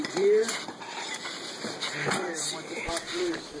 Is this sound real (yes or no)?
no